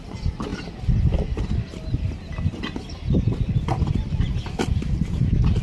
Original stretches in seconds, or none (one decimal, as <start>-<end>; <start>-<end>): 0.0-5.6

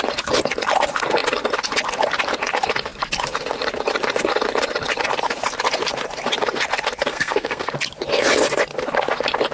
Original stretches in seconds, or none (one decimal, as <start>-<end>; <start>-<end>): 0.0-7.1; 7.7-9.5

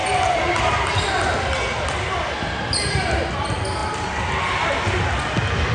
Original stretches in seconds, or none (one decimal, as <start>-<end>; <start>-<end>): 0.0-5.7